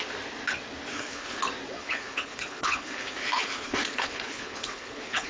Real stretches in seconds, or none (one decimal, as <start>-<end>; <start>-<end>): 0.0-0.9; 1.4-1.8